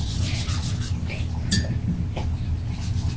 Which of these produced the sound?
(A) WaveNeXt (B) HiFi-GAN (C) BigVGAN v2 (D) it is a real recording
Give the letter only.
D